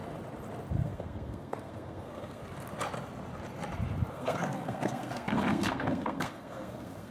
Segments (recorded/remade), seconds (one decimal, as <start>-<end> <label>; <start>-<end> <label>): 0.0-0.7 recorded; 0.7-2.4 remade; 2.4-4.1 recorded; 4.1-7.1 remade